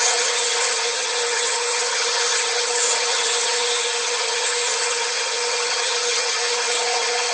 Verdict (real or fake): fake